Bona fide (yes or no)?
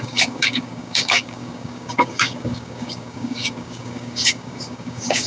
no